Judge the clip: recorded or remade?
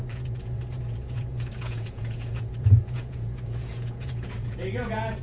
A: remade